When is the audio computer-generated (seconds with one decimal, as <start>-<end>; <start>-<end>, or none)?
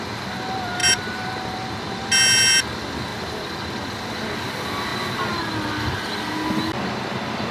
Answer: 0.8-2.0; 3.1-3.8